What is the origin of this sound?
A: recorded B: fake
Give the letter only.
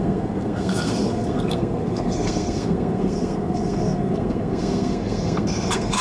B